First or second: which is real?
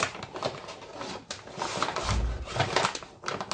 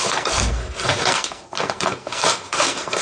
first